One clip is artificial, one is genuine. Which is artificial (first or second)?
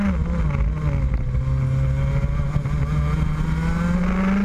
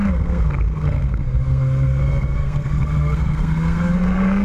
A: second